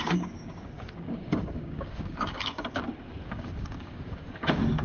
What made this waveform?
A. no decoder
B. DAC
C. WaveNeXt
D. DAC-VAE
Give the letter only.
B